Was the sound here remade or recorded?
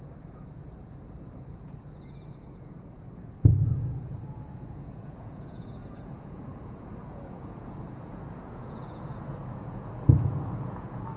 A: remade